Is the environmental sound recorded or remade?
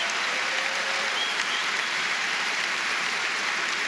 remade